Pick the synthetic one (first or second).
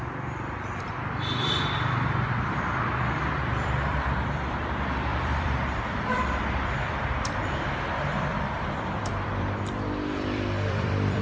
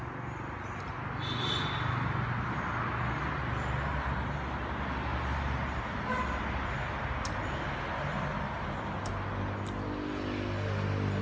first